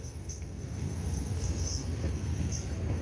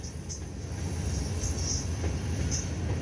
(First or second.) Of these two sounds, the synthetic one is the first